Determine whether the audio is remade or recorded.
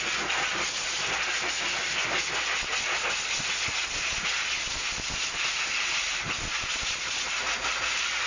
recorded